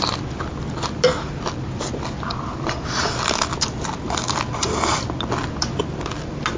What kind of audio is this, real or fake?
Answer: real